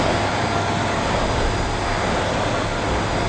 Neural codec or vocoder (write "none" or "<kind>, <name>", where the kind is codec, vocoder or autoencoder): none